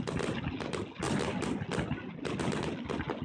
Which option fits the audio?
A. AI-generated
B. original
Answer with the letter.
B